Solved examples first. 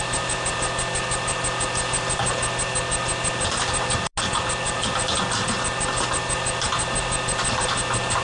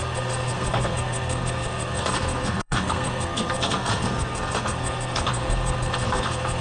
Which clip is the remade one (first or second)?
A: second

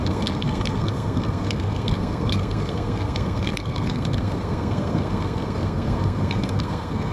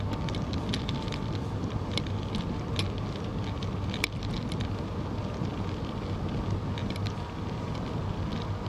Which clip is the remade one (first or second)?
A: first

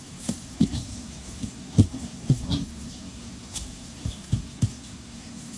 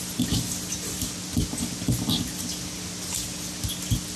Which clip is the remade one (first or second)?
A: first